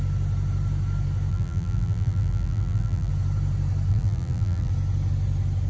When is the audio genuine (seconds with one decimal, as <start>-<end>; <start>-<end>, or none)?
0.0-1.3; 3.1-3.9; 4.7-5.7